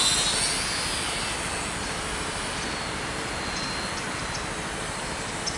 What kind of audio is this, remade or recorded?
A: recorded